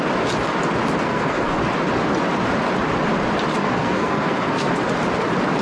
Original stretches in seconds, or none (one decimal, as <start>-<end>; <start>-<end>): 0.0-1.0; 1.6-3.6; 4.7-5.6